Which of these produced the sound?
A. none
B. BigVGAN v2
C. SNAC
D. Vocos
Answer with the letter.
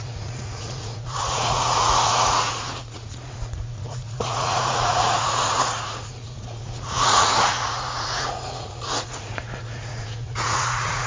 D